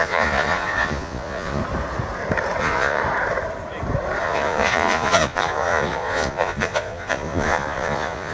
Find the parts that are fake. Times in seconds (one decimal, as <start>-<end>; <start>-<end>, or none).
0.0-1.6; 2.6-3.0; 4.2-8.3

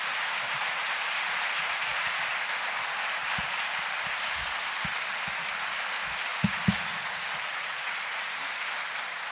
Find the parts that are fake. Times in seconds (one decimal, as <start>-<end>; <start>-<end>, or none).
0.6-2.2; 6.3-8.2

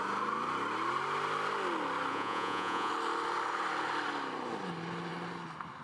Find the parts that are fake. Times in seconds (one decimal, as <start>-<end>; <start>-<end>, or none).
2.1-2.9

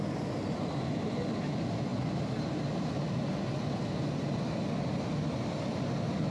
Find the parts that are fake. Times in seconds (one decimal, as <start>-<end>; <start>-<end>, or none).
none

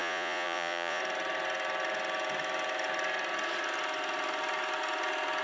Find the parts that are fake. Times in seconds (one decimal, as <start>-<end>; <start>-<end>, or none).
0.0-1.0

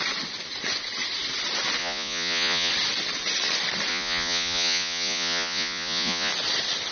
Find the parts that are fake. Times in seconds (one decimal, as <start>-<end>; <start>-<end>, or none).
1.8-2.7; 3.9-6.3

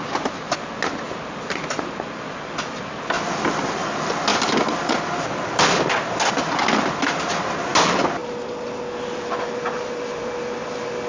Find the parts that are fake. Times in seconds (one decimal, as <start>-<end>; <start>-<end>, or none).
none